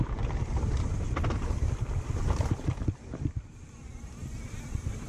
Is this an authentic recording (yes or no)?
yes